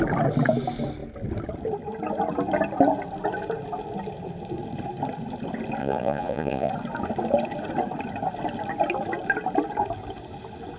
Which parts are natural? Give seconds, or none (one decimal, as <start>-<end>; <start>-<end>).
0.0-5.8; 6.7-10.8